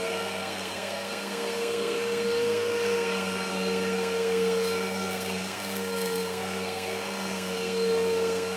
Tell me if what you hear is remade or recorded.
remade